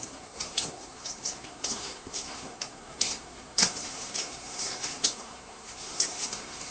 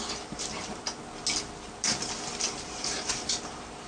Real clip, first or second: second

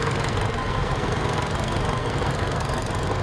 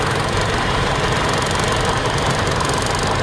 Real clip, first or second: second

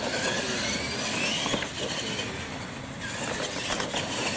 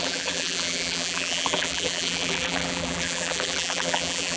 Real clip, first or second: first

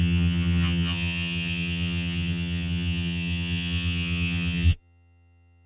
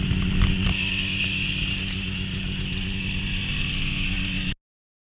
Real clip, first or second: second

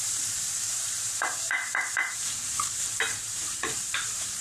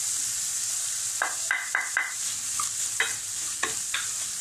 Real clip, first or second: second